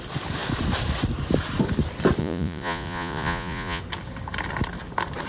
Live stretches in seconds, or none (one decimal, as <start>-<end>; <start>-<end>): 0.0-2.2; 3.8-5.3